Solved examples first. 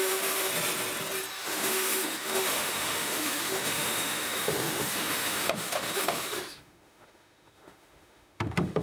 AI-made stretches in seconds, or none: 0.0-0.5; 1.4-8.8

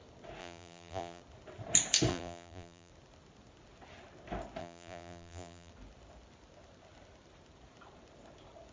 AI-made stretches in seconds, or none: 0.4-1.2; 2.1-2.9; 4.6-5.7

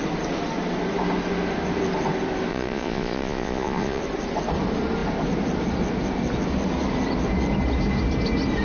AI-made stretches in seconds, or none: 2.5-4.0

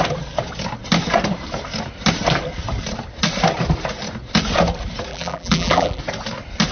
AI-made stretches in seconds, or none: 5.1-6.0

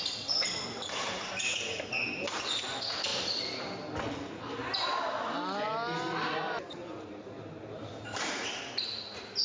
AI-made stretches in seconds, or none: none

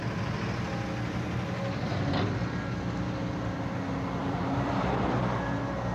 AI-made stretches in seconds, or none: 4.2-5.0

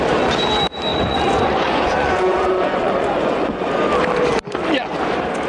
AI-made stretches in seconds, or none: 0.9-3.7